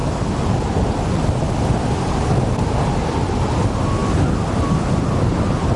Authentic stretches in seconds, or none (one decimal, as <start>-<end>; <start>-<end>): 0.0-5.8